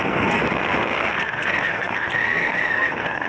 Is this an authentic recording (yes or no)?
no